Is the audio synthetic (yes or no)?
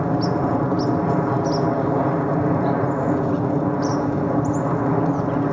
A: no